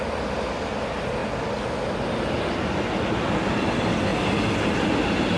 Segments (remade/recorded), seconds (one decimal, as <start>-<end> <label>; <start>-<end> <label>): 0.0-5.4 recorded